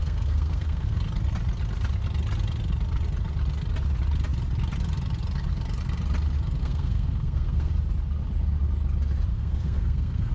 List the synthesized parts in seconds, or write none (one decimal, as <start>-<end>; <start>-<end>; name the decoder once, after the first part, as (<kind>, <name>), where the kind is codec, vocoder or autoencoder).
0.0-1.0 (codec, SNAC); 6.6-7.7; 9.3-10.3